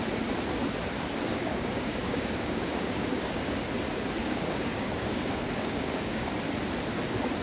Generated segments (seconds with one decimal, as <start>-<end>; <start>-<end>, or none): 1.3-3.4; 4.2-6.3